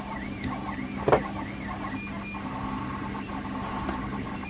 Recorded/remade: recorded